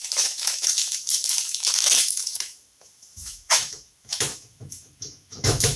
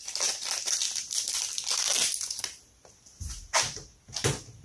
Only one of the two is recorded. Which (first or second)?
second